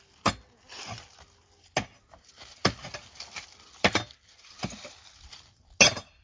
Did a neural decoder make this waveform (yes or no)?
no